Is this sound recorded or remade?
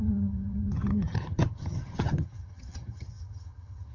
remade